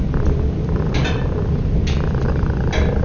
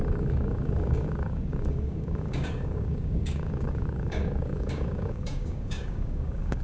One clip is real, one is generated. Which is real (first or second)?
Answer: first